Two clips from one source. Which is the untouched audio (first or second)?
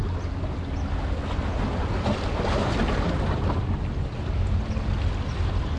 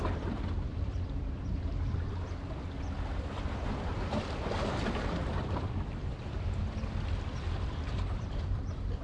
first